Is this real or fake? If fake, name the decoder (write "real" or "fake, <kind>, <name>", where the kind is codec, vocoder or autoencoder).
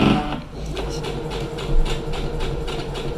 real